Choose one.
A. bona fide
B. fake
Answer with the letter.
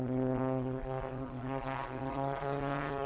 B